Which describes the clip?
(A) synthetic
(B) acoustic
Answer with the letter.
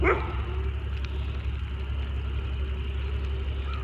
B